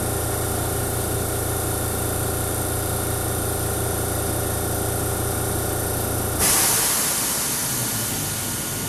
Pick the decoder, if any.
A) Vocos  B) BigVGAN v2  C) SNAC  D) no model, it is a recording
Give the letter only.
D